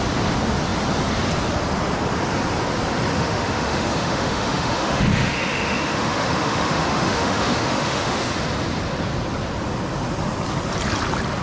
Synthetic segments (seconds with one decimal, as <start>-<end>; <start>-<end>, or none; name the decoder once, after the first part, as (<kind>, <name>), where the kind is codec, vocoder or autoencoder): 3.1-8.3 (autoencoder, DAC-VAE)